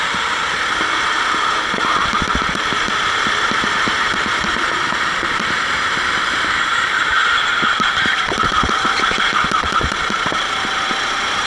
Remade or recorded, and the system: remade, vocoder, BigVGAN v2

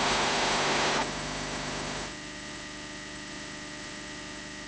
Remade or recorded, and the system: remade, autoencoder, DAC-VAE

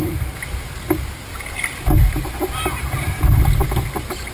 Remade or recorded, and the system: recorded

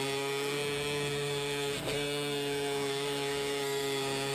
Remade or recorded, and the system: remade, codec, SNAC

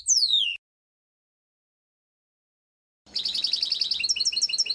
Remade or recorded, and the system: recorded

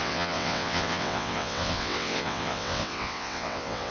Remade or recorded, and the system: remade, vocoder, WaveNeXt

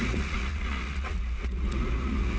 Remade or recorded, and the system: remade, vocoder, Vocos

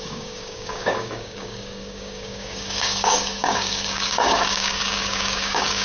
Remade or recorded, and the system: remade, codec, DAC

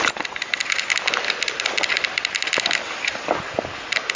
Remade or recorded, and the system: recorded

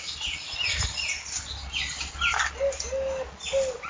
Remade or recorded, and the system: recorded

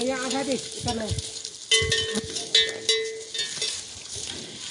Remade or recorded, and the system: recorded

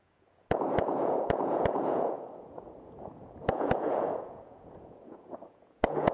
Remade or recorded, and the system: remade, vocoder, Vocos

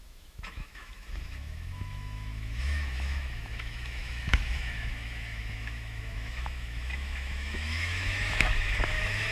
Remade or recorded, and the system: remade, autoencoder, DAC-VAE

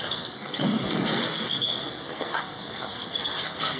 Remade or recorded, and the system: remade, codec, SNAC